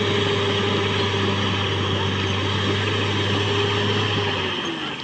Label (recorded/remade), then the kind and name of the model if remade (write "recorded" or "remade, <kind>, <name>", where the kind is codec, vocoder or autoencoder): recorded